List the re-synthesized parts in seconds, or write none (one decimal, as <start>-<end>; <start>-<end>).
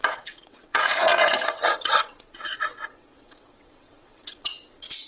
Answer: 0.0-5.1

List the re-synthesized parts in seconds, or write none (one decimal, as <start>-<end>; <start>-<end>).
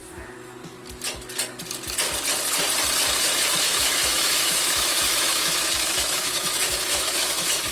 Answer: 3.6-7.7